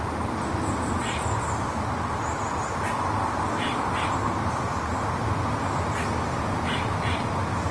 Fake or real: real